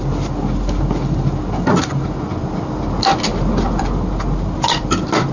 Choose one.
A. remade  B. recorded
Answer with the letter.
B